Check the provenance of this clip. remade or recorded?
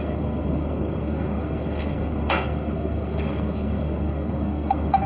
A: remade